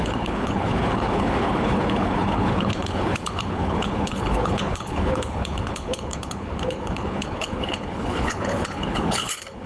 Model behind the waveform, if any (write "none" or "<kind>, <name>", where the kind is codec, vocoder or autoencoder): codec, HILCodec